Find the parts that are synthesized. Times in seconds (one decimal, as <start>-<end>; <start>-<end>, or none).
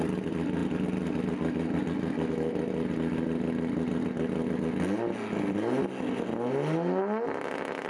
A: none